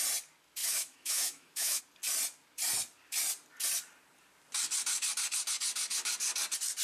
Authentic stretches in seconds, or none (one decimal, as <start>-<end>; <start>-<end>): 0.0-0.6; 1.8-6.8